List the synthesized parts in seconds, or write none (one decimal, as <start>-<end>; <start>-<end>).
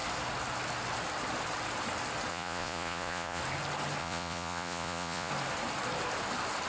2.3-3.4; 4.0-5.3